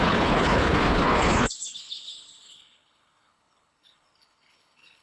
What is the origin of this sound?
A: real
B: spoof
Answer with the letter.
B